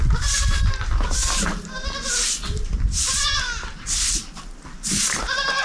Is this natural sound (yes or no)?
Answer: yes